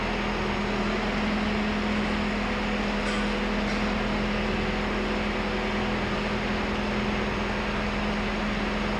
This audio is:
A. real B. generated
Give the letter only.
A